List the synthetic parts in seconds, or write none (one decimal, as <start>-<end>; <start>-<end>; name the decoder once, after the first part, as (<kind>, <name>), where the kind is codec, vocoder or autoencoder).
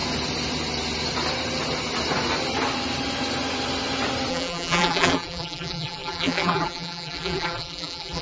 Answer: 4.3-8.2 (vocoder, BigVGAN v2)